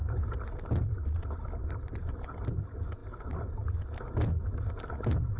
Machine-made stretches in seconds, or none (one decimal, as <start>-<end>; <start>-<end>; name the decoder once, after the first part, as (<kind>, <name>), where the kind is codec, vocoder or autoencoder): 0.0-2.6 (vocoder, BigVGAN v2)